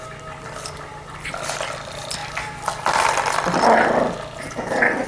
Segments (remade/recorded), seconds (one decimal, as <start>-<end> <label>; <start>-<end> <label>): 0.0-5.1 recorded